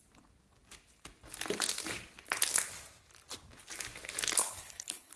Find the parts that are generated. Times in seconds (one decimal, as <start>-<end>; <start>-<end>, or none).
4.4-5.2